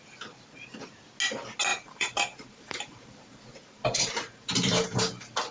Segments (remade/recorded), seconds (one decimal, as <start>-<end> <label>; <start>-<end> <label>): 0.0-1.7 recorded; 1.7-5.0 remade; 5.0-5.5 recorded